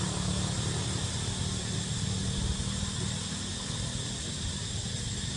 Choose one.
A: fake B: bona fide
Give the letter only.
B